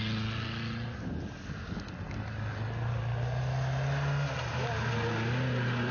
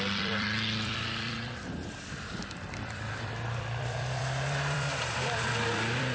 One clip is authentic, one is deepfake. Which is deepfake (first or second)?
second